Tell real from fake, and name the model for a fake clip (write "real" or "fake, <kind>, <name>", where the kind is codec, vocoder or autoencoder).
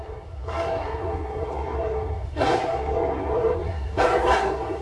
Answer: fake, codec, SNAC